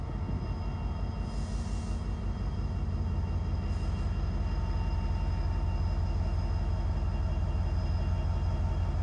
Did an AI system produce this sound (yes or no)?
no